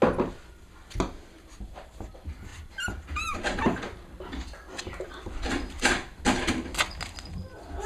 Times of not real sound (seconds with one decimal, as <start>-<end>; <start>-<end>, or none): none